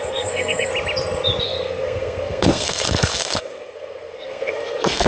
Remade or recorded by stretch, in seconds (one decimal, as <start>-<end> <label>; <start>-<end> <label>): 0.0-0.7 remade; 0.7-1.4 recorded; 1.4-5.1 remade